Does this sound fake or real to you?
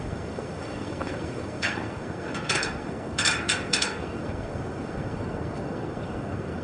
fake